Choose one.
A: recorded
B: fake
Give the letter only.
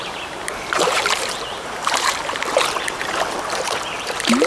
B